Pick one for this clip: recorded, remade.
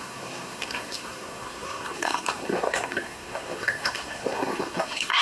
remade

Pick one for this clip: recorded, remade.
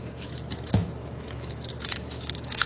remade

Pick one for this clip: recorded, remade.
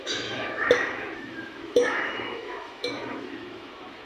remade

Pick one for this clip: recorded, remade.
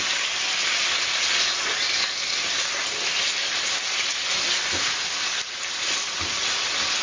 recorded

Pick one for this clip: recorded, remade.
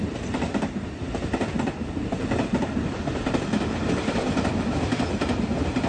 recorded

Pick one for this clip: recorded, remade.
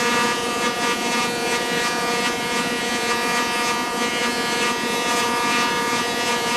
remade